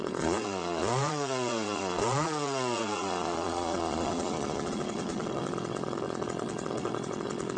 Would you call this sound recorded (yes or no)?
no